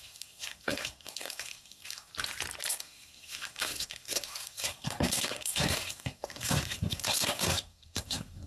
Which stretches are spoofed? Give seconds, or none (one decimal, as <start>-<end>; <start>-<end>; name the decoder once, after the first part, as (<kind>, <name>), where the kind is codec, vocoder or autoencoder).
0.0-2.1 (codec, SNAC); 2.7-8.5